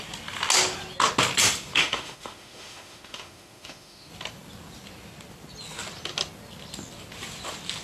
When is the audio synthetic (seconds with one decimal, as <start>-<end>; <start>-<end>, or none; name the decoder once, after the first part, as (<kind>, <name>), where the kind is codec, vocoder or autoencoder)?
1.8-4.1 (autoencoder, DAC-VAE)